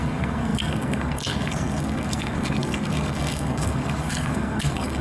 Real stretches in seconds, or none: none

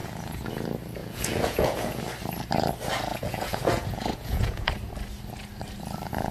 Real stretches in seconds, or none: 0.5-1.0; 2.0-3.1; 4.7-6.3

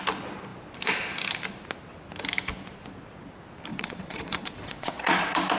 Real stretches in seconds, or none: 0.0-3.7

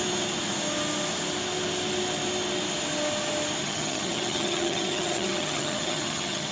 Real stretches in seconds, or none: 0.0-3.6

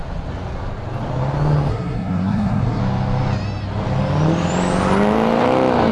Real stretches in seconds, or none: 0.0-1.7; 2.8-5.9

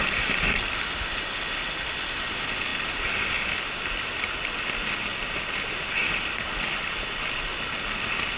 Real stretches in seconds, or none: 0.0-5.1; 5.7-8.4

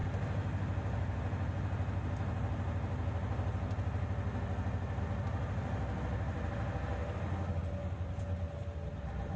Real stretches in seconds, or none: 0.0-9.4

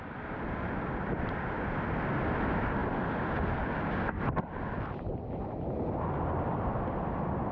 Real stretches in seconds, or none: 0.0-7.5